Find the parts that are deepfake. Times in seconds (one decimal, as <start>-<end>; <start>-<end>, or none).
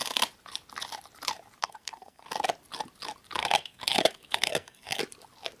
1.6-2.3; 3.4-5.0